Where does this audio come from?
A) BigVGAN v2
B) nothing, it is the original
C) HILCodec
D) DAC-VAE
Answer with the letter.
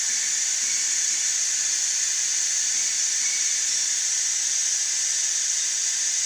B